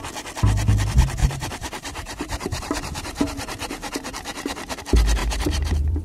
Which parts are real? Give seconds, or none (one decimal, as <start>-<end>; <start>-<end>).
0.0-1.2; 4.8-5.2